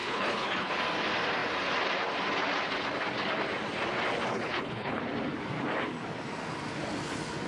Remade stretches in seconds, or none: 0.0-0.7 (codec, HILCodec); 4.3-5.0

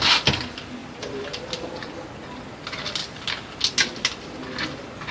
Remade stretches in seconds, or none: 0.8-1.3 (vocoder, BigVGAN v2)

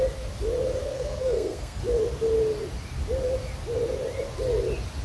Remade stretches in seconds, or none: 0.8-1.8 (codec, SNAC)

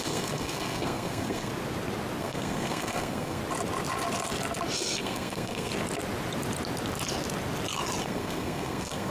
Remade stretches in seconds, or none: 0.0-1.5 (codec, SNAC); 2.2-3.4; 5.0-5.7; 8.0-9.1

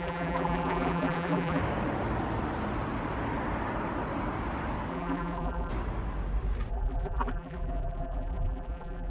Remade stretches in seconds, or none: 0.0-1.6 (vocoder, BigVGAN v2); 4.9-5.7; 6.7-9.1

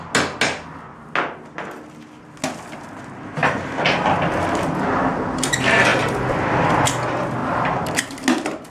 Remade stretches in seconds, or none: none

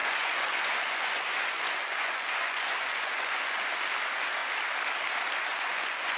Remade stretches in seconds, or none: 0.0-3.7 (vocoder, Vocos); 5.5-6.2